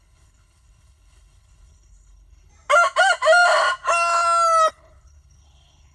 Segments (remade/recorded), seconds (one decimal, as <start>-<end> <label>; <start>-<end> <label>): 0.0-2.5 remade; 2.5-4.7 recorded; 4.7-5.9 remade